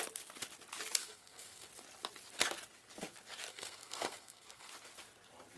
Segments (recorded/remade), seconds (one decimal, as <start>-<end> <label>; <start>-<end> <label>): 0.0-1.0 recorded; 1.0-1.7 remade; 1.7-3.5 recorded; 3.5-4.7 remade; 4.7-5.6 recorded